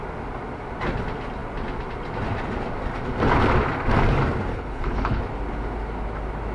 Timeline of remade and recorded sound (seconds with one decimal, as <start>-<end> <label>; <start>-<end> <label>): 0.0-4.5 recorded; 4.5-5.2 remade; 5.2-6.5 recorded